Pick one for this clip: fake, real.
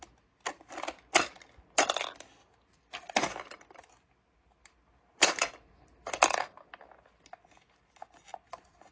real